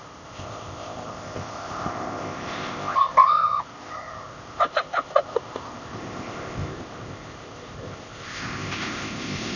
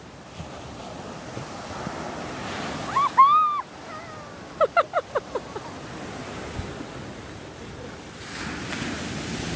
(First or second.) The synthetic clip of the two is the first